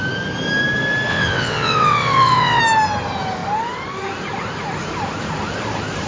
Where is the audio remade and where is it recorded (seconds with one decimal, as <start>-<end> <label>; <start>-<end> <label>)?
0.0-1.1 recorded; 1.1-2.6 remade; 2.6-6.1 recorded